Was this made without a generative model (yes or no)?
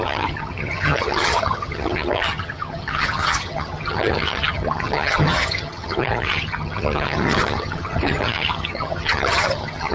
no